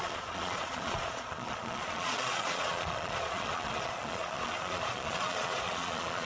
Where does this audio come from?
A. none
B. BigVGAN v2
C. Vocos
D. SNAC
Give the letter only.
C